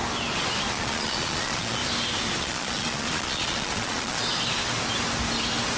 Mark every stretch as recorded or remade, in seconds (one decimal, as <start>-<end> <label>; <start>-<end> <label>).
0.0-0.7 recorded; 0.7-1.8 remade; 1.8-2.4 recorded; 2.4-4.2 remade; 4.2-5.8 recorded